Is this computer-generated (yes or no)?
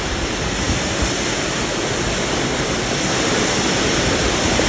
no